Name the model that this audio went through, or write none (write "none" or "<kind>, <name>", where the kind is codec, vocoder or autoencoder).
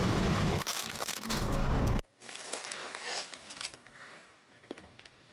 codec, DAC